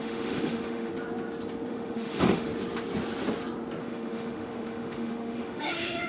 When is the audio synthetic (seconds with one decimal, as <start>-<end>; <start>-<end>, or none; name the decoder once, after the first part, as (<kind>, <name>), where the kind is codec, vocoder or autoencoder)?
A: 0.0-0.9 (autoencoder, DAC-VAE); 1.7-2.5; 3.8-6.1